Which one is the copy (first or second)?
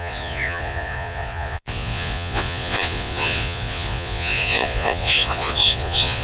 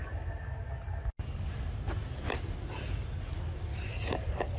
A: first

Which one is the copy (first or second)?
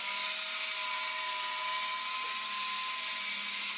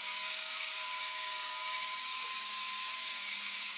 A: second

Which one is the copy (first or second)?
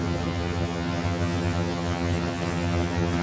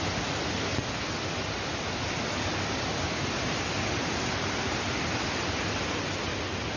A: first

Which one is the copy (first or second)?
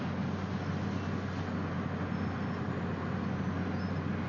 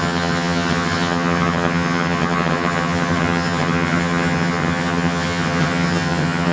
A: second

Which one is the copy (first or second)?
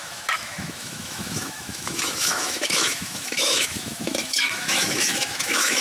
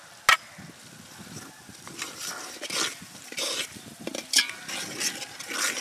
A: first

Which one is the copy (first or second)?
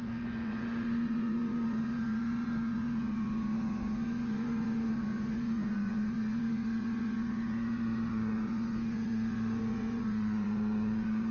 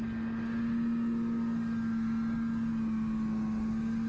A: first